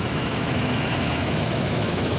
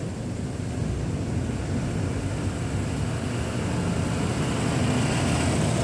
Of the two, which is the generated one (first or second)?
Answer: first